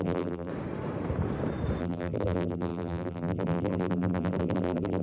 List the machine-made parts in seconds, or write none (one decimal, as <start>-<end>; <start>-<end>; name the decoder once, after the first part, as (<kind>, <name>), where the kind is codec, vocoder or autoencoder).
0.0-0.5 (vocoder, BigVGAN v2); 1.8-5.0